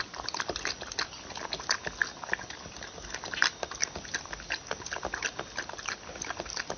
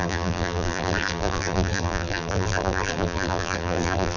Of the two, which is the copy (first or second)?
second